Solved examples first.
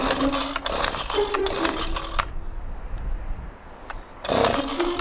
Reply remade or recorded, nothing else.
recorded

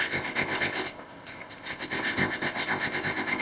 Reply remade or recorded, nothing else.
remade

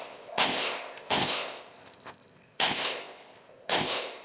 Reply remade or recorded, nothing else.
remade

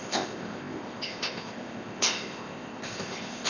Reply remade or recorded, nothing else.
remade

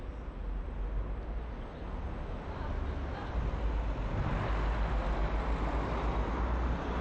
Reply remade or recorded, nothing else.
recorded